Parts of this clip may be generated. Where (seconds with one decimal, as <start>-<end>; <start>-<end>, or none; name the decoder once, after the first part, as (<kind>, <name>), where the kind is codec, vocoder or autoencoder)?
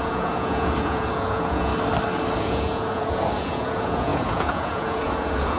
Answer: 0.0-1.7 (vocoder, Vocos); 2.4-5.6